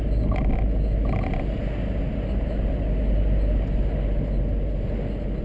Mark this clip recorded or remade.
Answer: recorded